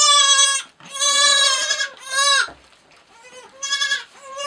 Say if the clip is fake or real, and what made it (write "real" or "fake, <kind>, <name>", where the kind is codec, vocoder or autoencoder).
fake, vocoder, BigVGAN v2